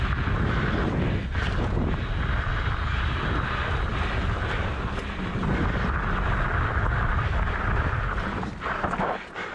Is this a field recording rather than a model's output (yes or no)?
yes